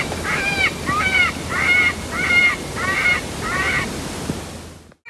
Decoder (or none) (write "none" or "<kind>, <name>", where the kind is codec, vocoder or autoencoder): none